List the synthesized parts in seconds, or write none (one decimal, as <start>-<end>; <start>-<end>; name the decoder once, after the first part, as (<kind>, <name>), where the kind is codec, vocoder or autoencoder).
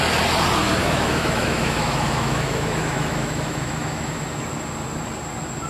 0.8-4.2 (autoencoder, DAC-VAE)